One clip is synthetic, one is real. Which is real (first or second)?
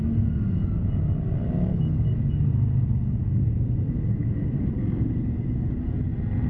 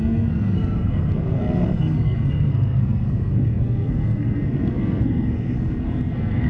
first